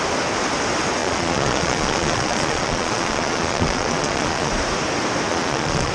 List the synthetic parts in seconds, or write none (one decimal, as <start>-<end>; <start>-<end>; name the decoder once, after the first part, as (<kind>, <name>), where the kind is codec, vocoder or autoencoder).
1.0-4.5 (vocoder, Vocos); 5.3-5.9